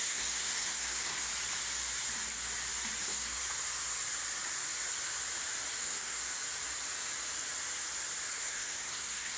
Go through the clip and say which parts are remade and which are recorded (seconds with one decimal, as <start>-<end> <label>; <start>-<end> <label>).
0.0-1.3 remade; 1.3-3.0 recorded; 3.0-3.4 remade; 3.4-5.8 recorded; 5.8-6.2 remade; 6.2-8.3 recorded; 8.3-9.4 remade